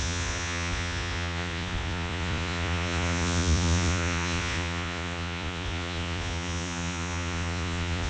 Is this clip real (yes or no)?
no